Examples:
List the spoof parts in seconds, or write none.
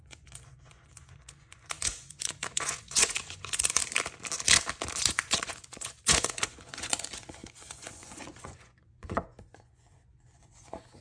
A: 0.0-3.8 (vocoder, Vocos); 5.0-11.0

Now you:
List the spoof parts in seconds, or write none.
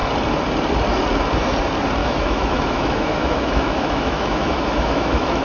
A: 2.0-5.4 (autoencoder, DAC-VAE)